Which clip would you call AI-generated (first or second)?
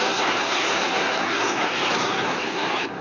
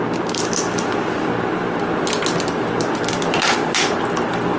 first